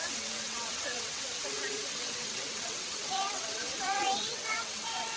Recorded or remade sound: remade